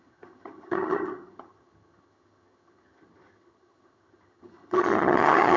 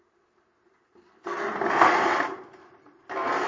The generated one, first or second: first